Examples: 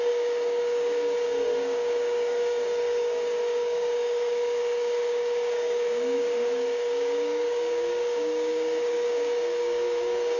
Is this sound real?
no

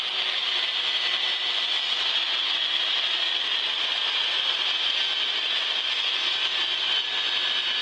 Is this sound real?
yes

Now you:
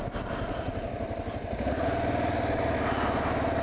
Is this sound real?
yes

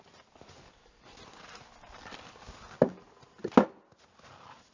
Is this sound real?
yes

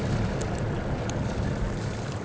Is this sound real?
yes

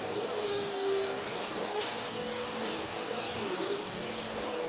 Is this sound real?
no